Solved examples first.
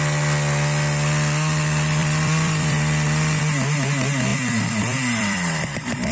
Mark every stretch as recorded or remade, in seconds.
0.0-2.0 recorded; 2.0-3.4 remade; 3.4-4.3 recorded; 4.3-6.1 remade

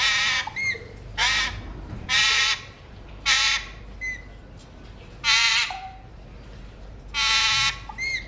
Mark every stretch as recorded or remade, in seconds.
0.0-1.1 recorded; 1.1-3.8 remade; 3.8-5.5 recorded; 5.5-7.1 remade; 7.1-8.3 recorded

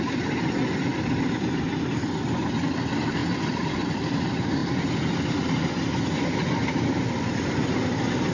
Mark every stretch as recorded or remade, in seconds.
0.0-8.3 recorded

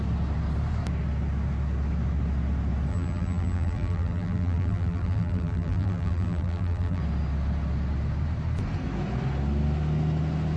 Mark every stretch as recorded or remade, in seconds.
0.0-2.9 recorded; 2.9-7.0 remade; 7.0-10.6 recorded

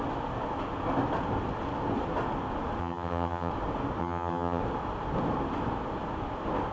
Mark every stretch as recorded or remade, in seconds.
0.0-2.8 recorded; 2.8-3.5 remade; 3.5-4.0 recorded; 4.0-4.6 remade; 4.6-6.7 recorded

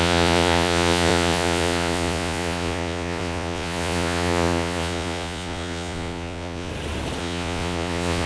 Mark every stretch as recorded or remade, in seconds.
0.0-6.7 remade; 6.7-7.2 recorded; 7.2-8.3 remade